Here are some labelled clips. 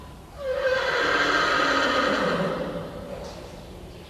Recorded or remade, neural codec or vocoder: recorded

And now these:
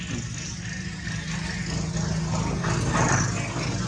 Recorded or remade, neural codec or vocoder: recorded